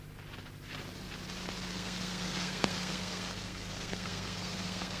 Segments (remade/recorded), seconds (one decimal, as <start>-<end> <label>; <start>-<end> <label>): 0.0-1.7 recorded; 1.7-5.0 remade